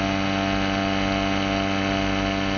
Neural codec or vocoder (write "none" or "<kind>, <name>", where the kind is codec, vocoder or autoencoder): none